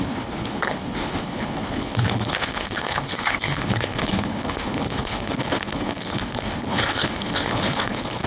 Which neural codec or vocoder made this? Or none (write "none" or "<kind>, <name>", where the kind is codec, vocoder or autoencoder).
codec, HILCodec